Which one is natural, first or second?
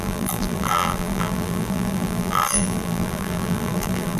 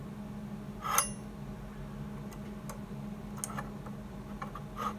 second